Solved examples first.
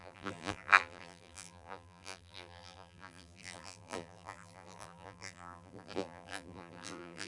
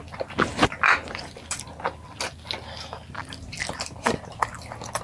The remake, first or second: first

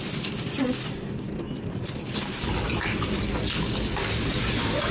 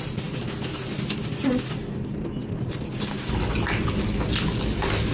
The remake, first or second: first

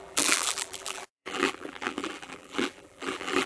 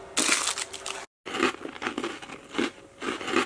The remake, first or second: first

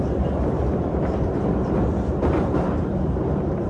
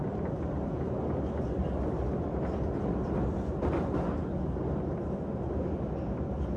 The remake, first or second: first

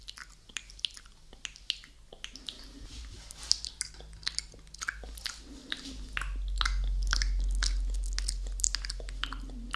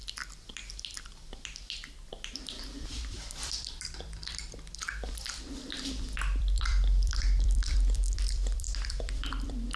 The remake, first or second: second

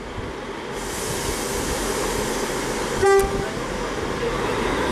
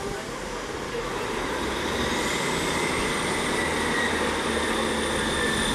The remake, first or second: second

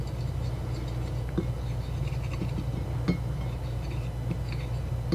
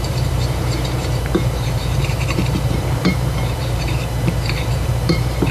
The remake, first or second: second